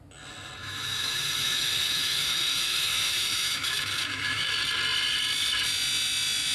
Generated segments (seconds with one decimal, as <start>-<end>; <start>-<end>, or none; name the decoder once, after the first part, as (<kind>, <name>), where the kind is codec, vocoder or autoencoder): 0.6-4.5 (autoencoder, DAC-VAE)